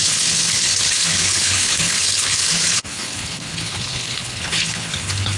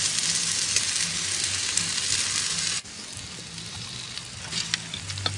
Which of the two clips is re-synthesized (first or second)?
first